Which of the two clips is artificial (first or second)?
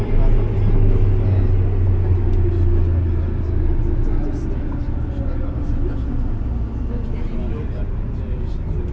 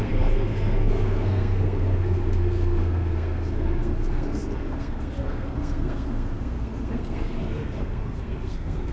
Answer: second